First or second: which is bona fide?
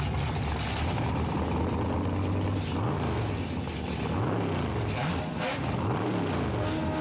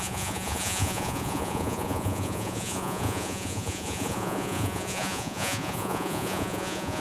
first